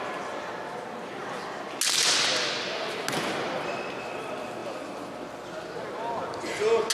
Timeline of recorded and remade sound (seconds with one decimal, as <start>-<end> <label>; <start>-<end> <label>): 0.0-6.9 recorded